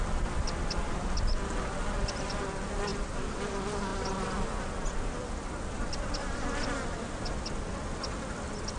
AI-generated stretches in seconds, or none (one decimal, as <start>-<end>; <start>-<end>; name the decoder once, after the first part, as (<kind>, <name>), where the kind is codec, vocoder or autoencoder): none